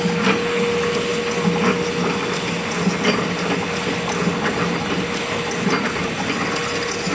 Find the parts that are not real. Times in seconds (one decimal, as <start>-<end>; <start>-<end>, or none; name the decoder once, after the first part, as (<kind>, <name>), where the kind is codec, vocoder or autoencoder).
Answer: none